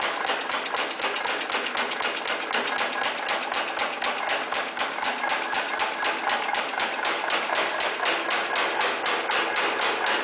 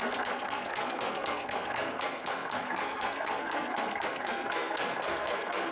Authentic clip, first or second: first